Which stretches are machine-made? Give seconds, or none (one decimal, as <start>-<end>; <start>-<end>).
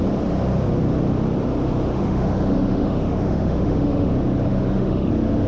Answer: 1.9-4.1; 4.5-5.1